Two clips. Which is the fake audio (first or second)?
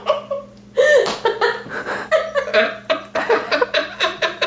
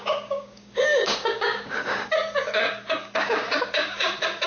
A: second